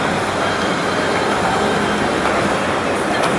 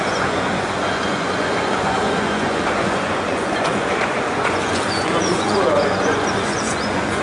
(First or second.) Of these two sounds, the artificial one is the second